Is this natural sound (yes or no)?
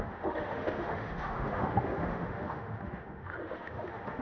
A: no